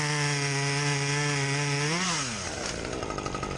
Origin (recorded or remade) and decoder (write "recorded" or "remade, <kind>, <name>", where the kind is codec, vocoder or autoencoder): recorded